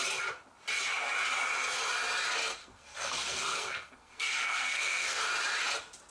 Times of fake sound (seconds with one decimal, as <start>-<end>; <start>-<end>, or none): 2.5-5.2